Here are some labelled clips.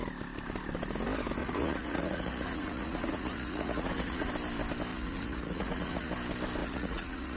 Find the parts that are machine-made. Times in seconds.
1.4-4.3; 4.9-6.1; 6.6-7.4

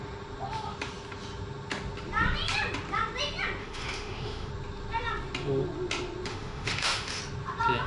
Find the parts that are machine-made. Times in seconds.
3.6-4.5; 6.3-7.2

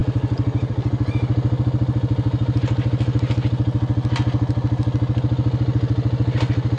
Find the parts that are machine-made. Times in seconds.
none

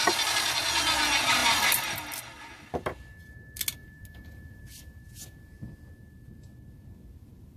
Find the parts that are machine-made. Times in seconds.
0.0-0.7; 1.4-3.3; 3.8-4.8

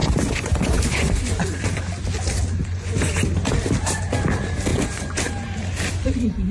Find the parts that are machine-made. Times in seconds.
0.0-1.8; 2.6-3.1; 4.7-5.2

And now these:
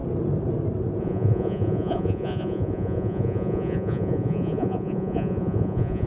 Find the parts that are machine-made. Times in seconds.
1.0-6.1